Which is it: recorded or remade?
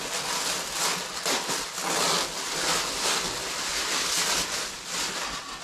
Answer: recorded